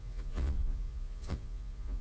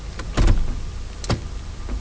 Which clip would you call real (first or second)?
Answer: second